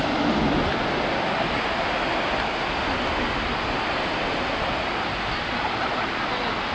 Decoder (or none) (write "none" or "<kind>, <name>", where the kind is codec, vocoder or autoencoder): none